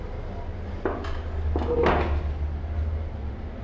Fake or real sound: real